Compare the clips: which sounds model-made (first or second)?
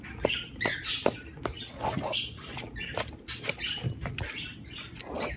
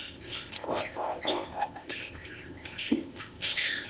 second